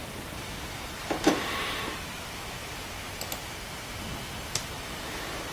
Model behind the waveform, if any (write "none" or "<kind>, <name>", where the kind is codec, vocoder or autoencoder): none